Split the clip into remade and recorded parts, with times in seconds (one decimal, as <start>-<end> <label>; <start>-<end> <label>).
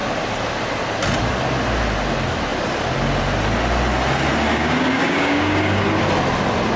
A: 0.0-4.5 recorded; 4.5-5.8 remade; 5.8-6.8 recorded